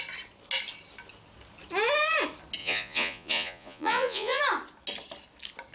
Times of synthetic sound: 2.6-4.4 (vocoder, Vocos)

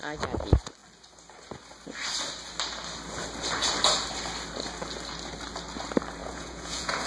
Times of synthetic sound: 6.2-7.1 (vocoder, Vocos)

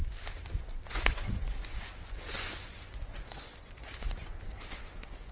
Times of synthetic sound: 0.9-5.3 (vocoder, Vocos)

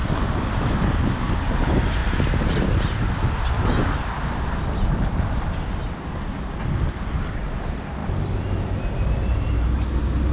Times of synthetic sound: none

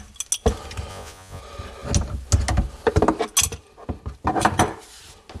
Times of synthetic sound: 0.9-1.4 (vocoder, Vocos)

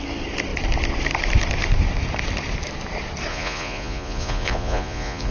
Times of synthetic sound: 3.3-5.3 (vocoder, Vocos)